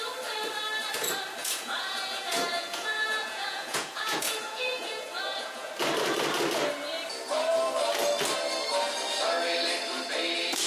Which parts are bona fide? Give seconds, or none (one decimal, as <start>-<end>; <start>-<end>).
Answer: 0.0-1.4; 5.7-10.7